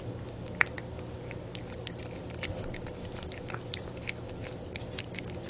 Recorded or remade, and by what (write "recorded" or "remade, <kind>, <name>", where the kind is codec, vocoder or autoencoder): recorded